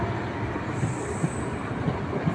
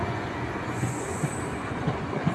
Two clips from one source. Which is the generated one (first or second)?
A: second